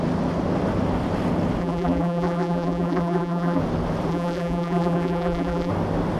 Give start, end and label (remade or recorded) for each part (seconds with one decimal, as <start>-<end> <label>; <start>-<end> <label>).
0.0-1.6 recorded; 1.6-3.6 remade; 3.6-4.1 recorded; 4.1-5.7 remade; 5.7-6.2 recorded